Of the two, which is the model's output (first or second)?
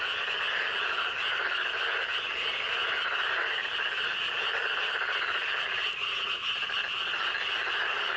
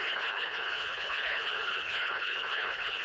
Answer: second